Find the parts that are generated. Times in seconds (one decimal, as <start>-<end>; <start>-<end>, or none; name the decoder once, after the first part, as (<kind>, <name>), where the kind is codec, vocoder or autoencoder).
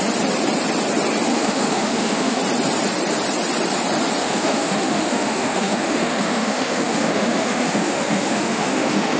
1.3-2.4 (autoencoder, DAC-VAE); 4.2-9.2